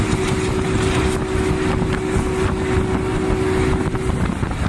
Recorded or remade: recorded